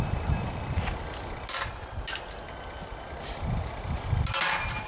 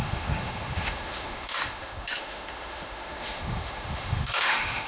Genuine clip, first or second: first